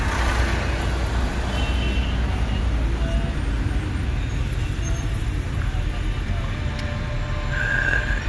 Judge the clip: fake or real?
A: real